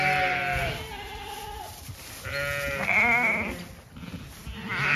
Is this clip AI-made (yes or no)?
no